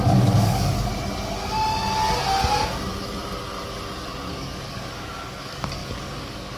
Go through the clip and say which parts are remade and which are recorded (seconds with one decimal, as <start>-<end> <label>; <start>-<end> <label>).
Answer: 0.0-0.9 remade; 0.9-4.3 recorded; 4.3-6.6 remade